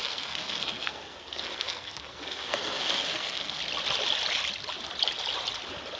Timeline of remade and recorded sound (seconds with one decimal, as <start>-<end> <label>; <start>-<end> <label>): 0.0-3.6 remade; 3.6-6.0 recorded